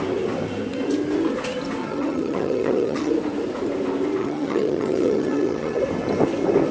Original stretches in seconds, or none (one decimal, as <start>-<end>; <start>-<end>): 0.0-1.8; 3.1-4.2; 5.8-6.7